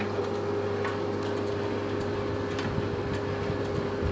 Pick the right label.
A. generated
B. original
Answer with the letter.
B